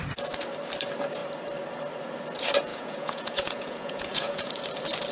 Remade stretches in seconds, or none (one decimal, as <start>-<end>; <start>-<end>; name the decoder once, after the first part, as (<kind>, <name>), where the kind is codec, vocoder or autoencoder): 2.7-4.5 (vocoder, Vocos)